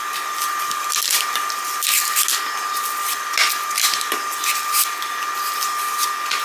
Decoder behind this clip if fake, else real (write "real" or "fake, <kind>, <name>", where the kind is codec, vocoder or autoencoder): real